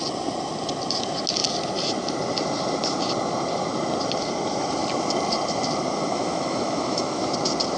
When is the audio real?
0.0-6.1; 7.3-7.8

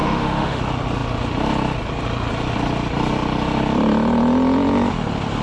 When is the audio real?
0.6-5.4

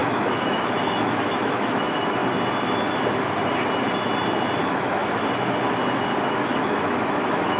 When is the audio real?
2.2-4.6; 5.0-6.2

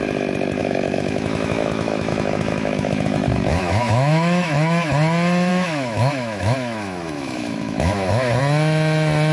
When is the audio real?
0.0-0.6; 4.9-5.5; 8.4-9.3

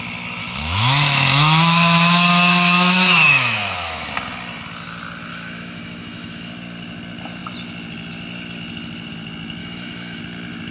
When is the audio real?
0.0-0.4; 4.1-5.3; 6.5-9.6; 10.2-10.7

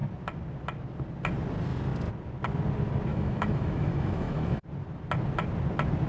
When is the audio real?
0.0-3.1; 4.6-6.1